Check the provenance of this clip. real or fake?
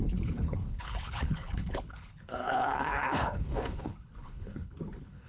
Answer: fake